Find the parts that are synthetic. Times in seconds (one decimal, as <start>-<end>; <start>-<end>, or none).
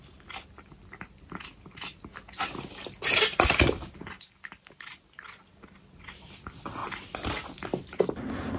none